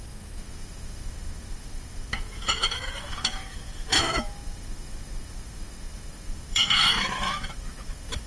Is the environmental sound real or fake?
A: fake